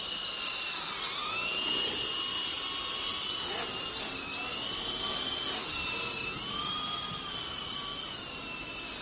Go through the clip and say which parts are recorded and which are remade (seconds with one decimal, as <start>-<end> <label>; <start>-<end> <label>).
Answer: 0.0-1.2 recorded; 1.2-1.8 remade; 1.8-9.0 recorded